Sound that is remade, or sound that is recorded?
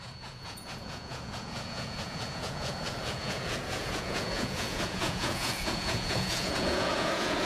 remade